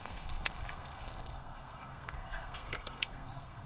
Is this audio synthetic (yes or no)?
yes